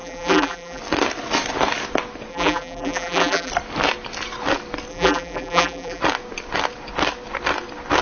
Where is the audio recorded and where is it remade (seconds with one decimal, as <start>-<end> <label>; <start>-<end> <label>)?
0.0-0.8 remade; 0.8-2.3 recorded; 2.3-3.5 remade; 3.5-4.9 recorded; 4.9-6.0 remade; 6.0-8.0 recorded